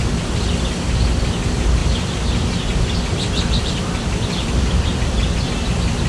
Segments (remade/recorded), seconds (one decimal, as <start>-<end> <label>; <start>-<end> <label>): 0.0-1.8 recorded; 1.8-5.5 remade; 5.5-6.1 recorded